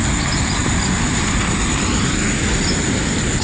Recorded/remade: recorded